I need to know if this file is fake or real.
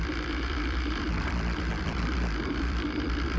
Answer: fake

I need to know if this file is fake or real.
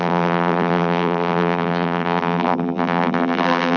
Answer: fake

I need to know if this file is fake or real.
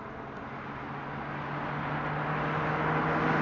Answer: real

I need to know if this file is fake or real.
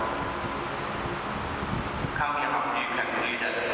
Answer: real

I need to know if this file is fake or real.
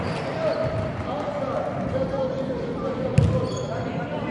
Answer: real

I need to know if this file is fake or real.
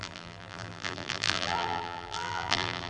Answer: fake